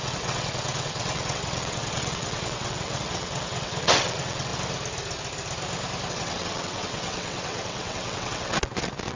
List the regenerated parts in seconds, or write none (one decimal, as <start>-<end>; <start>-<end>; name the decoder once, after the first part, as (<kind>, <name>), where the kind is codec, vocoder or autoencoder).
0.0-4.5 (vocoder, WaveNeXt); 6.1-9.2